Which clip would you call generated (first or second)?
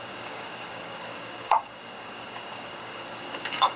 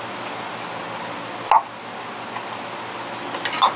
first